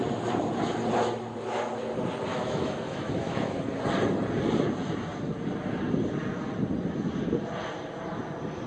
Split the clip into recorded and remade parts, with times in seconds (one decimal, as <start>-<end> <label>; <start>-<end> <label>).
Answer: 0.0-2.3 recorded; 2.3-3.6 remade; 3.6-8.7 recorded